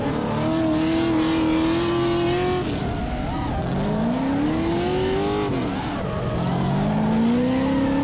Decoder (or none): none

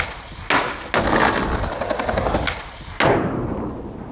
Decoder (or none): none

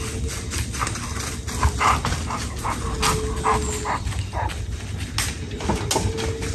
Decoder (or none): none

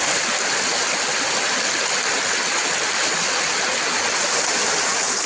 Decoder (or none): none